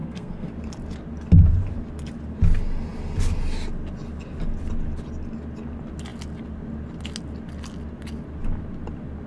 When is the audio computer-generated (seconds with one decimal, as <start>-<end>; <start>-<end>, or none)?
0.0-0.5